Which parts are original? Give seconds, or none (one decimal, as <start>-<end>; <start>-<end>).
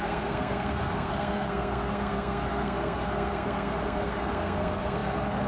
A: none